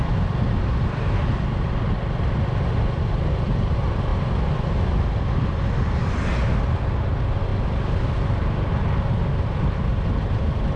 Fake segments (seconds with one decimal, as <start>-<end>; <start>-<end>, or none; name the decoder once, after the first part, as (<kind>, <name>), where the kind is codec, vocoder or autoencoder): none